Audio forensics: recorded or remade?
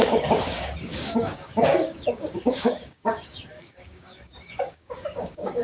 remade